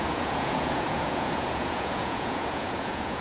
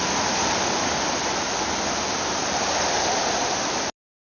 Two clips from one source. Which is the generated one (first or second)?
first